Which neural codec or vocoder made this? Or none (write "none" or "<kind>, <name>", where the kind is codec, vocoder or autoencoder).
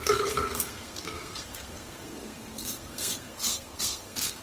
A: codec, SNAC